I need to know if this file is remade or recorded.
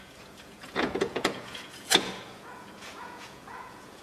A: remade